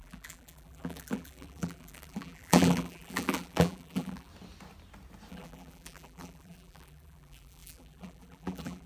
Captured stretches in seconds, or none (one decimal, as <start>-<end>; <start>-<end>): 4.3-5.3